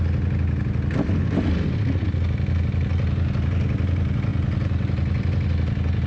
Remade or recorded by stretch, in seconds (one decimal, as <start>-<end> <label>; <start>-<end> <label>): 0.0-6.1 recorded